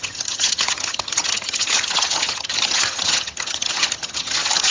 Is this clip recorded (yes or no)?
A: no